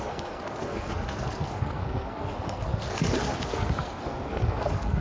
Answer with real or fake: fake